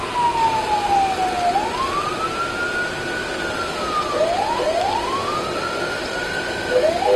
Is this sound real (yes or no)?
yes